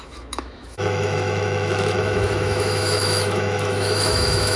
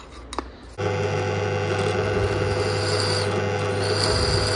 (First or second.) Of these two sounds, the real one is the second